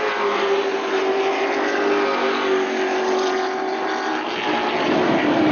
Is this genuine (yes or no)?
yes